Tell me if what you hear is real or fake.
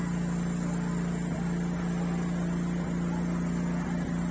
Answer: real